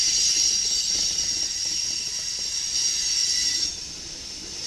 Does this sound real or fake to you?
real